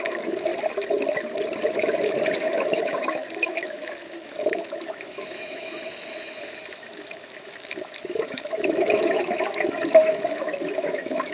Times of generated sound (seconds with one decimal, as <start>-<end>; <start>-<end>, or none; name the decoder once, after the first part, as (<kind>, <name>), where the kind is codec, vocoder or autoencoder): 0.0-0.5 (autoencoder, DAC-VAE); 1.7-11.3